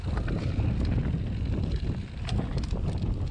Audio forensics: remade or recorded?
recorded